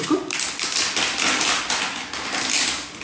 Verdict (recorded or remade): recorded